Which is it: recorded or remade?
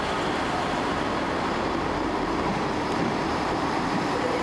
remade